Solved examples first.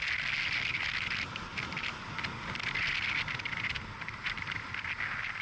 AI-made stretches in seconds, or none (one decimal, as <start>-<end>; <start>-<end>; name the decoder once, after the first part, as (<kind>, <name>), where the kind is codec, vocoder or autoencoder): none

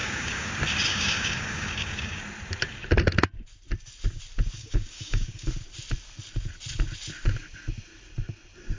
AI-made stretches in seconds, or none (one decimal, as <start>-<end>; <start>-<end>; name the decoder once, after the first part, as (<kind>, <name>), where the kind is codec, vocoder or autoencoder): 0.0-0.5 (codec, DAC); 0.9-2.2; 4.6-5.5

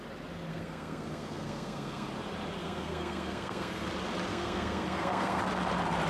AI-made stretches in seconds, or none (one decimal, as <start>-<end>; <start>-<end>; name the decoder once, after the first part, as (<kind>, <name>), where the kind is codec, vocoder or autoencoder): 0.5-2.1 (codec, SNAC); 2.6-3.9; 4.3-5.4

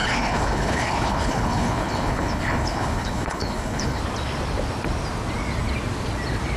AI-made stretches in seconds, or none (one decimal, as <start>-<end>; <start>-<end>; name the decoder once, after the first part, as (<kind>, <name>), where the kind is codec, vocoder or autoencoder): 0.0-4.0 (codec, HILCodec)

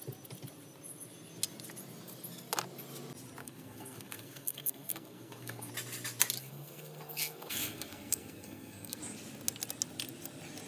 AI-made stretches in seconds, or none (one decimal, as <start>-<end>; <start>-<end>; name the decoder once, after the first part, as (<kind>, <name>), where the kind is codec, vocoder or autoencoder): 3.4-5.7 (codec, SNAC); 6.4-9.0

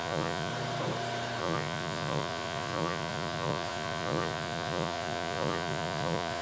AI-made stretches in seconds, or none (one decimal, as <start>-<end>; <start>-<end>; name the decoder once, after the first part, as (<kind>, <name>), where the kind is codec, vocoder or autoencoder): 0.0-0.5 (vocoder, Vocos); 1.4-6.4

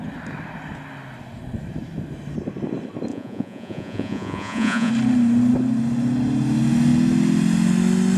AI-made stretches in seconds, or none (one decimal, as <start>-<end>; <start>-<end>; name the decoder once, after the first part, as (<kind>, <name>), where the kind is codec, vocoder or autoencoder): 3.1-4.9 (vocoder, Vocos)

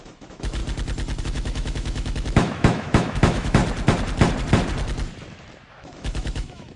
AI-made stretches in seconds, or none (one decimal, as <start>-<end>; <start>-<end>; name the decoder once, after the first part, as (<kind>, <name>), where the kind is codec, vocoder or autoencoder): 0.0-0.6 (autoencoder, DAC-VAE); 1.2-3.6; 5.7-6.8